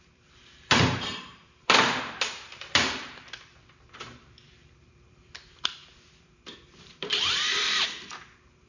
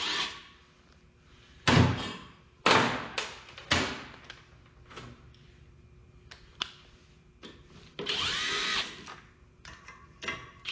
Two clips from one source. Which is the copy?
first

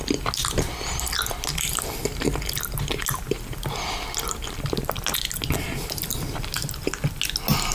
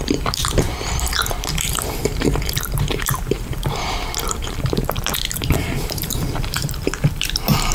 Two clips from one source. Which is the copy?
second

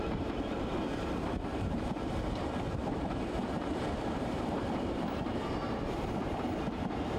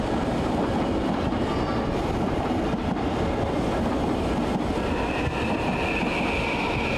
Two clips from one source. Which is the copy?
first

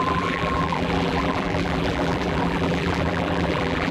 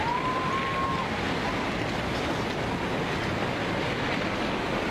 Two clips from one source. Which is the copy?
first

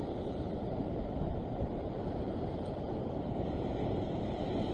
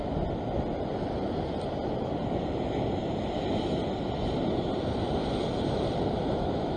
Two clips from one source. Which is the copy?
first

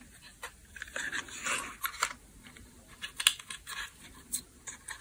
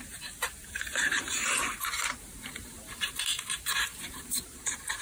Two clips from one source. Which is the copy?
second